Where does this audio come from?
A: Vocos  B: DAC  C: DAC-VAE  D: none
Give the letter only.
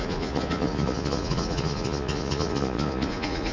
A